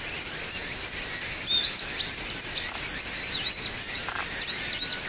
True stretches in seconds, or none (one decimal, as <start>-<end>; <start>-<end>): 0.0-5.1